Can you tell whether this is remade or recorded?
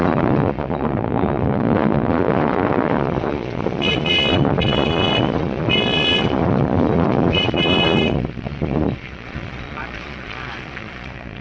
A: remade